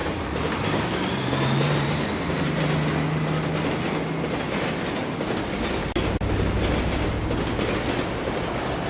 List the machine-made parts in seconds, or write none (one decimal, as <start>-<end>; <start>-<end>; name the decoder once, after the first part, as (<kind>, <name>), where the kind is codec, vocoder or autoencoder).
0.0-2.6 (vocoder, BigVGAN v2)